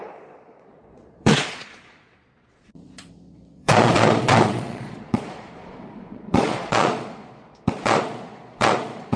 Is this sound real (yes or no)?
no